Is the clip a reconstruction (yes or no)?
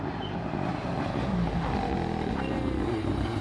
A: no